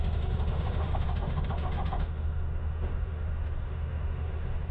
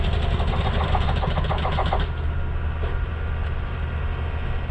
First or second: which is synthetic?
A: first